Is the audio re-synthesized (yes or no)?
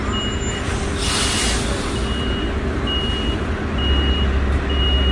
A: no